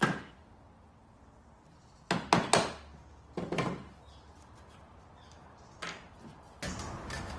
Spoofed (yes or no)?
no